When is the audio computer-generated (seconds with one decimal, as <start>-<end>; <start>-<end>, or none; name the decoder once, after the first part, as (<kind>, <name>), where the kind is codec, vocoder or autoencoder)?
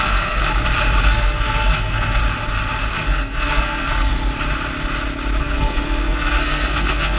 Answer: 0.0-0.4 (codec, SNAC); 1.0-2.2; 2.9-4.1; 5.4-7.2